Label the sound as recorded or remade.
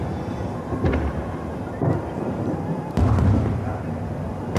recorded